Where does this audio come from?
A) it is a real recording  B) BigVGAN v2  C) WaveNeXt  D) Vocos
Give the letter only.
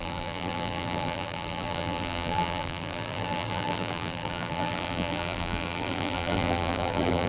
B